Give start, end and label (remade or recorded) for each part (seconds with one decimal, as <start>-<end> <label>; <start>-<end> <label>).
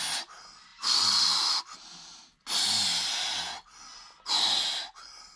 0.0-0.7 recorded; 0.7-1.6 remade; 1.6-5.4 recorded